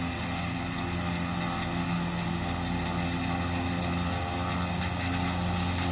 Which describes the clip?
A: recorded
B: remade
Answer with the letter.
A